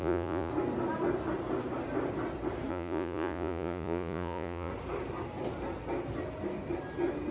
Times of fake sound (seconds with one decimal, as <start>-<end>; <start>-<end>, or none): 0.0-0.5; 2.7-4.7